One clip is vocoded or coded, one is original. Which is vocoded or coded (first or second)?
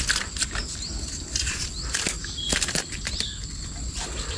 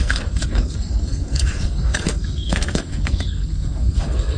second